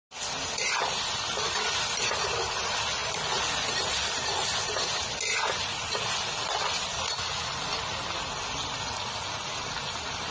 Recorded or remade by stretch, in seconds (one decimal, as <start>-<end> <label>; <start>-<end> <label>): 0.0-10.3 recorded